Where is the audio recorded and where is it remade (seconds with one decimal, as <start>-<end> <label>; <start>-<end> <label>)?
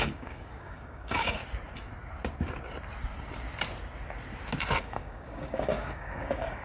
0.0-1.4 remade; 1.4-4.8 recorded; 4.8-6.6 remade